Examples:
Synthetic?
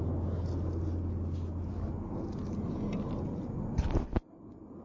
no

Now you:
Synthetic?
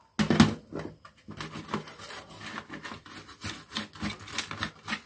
no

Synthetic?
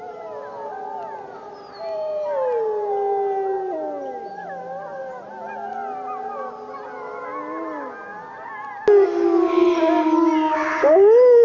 no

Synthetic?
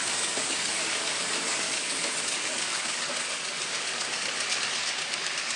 yes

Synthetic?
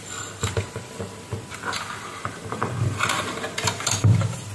no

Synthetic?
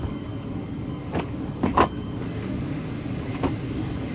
yes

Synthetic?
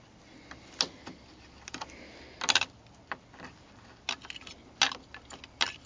no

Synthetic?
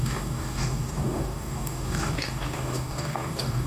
yes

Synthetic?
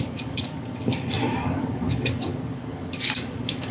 yes